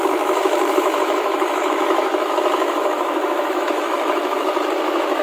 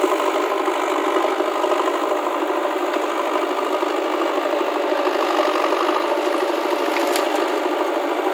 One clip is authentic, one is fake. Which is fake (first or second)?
first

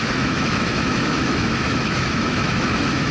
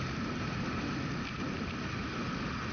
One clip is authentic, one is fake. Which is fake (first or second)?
first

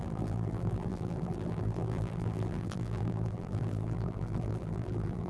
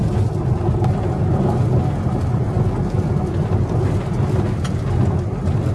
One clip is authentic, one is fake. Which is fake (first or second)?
first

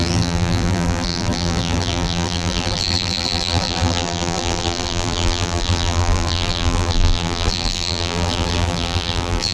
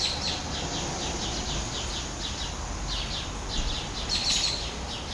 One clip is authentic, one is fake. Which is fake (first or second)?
first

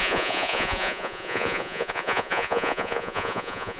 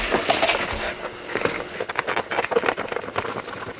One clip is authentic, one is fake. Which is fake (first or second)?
first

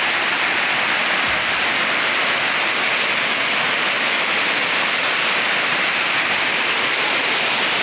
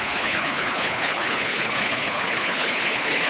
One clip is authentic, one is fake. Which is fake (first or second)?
second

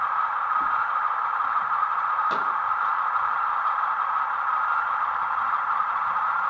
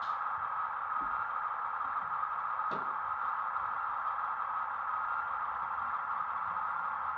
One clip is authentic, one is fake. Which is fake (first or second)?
first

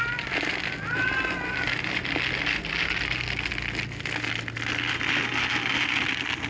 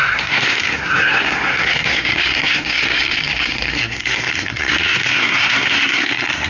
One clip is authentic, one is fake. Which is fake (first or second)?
second